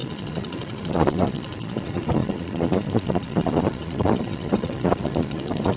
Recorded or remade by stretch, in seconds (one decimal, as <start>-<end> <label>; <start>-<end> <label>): 0.0-5.8 remade